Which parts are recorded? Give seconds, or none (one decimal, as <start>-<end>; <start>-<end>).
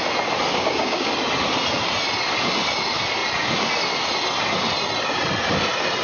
0.0-0.5; 1.1-6.0